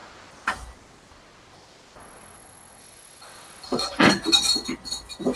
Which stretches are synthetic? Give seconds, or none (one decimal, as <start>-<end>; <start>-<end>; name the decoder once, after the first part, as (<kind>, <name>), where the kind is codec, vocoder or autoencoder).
2.0-4.1 (vocoder, WaveNeXt)